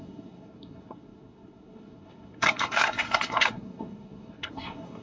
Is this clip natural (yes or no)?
no